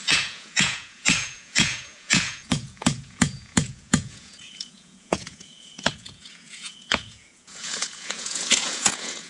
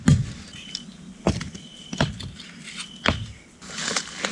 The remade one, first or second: first